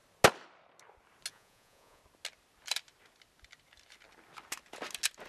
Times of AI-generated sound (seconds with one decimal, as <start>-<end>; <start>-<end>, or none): 1.3-2.0